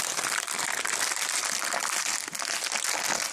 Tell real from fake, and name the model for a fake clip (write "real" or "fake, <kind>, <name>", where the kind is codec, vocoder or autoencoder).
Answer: real